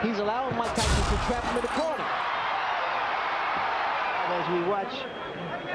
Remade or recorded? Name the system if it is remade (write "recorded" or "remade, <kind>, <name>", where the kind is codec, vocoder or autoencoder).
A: recorded